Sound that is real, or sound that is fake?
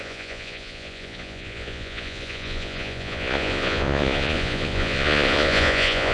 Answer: fake